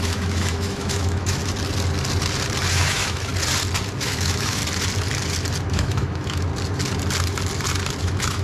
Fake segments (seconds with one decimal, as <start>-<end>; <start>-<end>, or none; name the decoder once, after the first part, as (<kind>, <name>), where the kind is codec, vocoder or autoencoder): 0.0-1.4 (autoencoder, DAC-VAE); 2.7-3.3; 4.0-4.6; 5.7-6.5; 8.0-8.4